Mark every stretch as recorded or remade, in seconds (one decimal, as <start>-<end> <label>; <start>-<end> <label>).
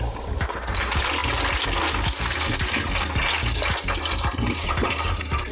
0.0-1.2 remade; 1.2-4.5 recorded; 4.5-5.5 remade